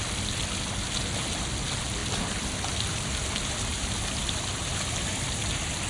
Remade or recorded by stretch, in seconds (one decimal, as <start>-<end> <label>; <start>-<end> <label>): 0.0-2.0 recorded; 2.0-3.2 remade; 3.2-3.7 recorded; 3.7-5.5 remade; 5.5-5.9 recorded